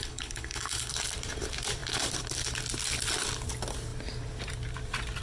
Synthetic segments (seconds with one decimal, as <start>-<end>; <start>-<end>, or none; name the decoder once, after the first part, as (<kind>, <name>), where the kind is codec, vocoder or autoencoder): 0.0-0.9 (codec, HILCodec)